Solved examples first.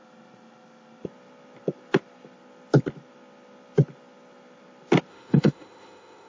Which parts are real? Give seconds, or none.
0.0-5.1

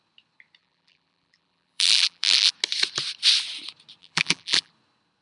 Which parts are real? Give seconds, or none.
0.0-0.6; 2.5-4.0; 4.7-5.2

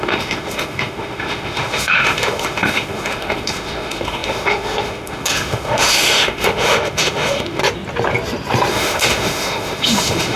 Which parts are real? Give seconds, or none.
7.6-8.7